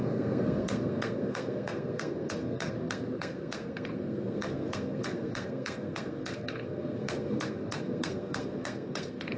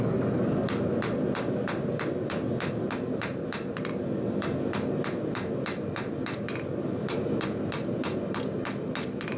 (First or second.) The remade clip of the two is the first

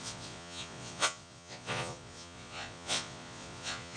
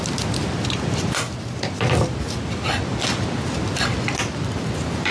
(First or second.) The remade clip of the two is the first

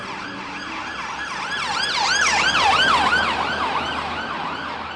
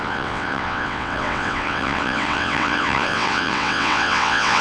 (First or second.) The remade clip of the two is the second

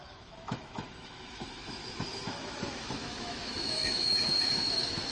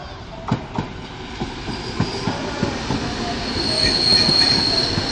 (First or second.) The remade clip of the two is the first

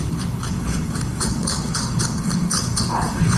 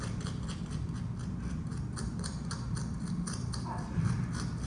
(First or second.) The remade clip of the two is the first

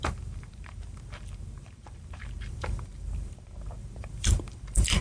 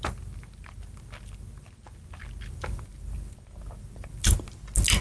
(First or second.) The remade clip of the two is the first